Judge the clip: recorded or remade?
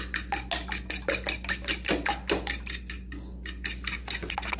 recorded